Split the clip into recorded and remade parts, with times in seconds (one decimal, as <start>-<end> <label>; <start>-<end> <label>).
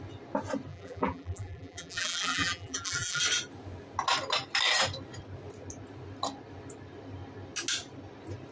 0.0-0.7 recorded; 0.7-3.2 remade; 3.2-8.5 recorded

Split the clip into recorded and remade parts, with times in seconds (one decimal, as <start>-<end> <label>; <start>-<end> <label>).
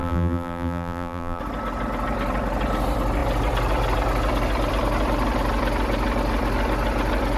0.0-1.4 remade; 1.4-7.4 recorded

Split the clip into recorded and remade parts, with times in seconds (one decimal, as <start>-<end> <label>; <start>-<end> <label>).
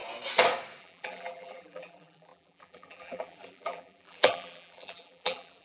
0.0-0.8 recorded; 0.8-5.6 remade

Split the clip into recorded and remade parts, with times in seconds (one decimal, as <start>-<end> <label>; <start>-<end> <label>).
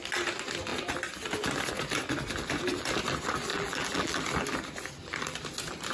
0.0-3.5 recorded; 3.5-4.2 remade; 4.2-5.9 recorded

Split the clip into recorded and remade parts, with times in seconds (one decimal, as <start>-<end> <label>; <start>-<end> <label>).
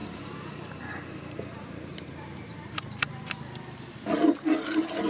0.0-3.1 remade; 3.1-5.1 recorded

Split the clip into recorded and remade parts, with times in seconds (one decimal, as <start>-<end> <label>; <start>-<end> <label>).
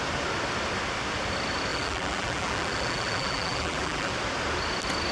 0.0-1.7 recorded; 1.7-4.1 remade; 4.1-5.1 recorded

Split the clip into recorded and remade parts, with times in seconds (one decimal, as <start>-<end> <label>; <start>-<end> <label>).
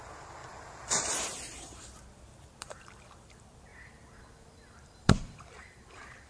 0.0-6.3 remade